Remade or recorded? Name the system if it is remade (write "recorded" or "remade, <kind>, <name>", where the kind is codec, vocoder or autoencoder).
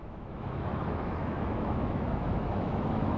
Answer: remade, autoencoder, DAC-VAE